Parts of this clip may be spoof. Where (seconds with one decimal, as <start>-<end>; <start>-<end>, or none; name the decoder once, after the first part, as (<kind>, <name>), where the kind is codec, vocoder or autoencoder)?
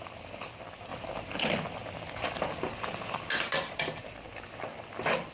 none